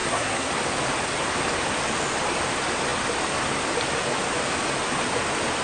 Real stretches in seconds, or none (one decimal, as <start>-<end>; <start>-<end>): 0.5-5.6